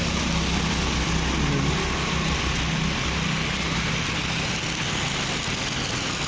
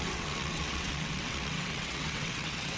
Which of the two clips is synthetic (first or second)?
second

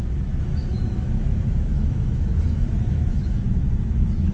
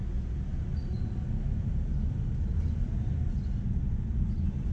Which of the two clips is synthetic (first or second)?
first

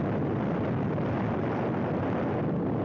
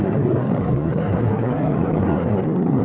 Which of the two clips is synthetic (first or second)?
second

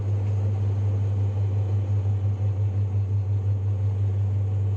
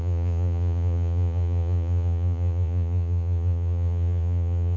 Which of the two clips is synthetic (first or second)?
second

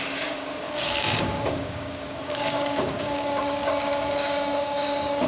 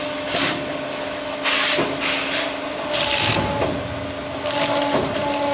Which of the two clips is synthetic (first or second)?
first